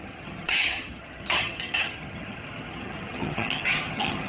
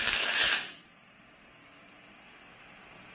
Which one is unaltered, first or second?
second